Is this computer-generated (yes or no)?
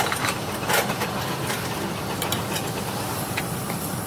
yes